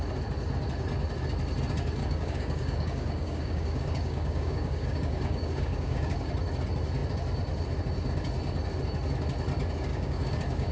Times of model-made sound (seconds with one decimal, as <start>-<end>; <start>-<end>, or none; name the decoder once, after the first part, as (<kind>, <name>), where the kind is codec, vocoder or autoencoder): 2.0-6.3 (codec, DAC); 9.9-10.7